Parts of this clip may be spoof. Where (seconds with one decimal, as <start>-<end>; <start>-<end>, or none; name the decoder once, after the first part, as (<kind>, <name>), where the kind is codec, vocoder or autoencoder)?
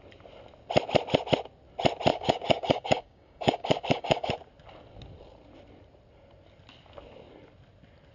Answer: 2.1-4.3 (codec, DAC)